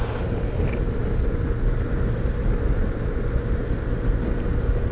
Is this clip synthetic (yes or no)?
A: no